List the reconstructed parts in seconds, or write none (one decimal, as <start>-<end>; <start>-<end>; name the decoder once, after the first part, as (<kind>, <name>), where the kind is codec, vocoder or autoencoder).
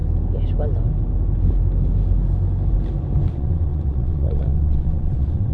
3.3-5.5 (vocoder, WaveNeXt)